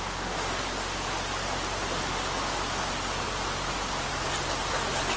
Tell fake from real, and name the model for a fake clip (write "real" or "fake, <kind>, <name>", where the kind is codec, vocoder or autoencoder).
real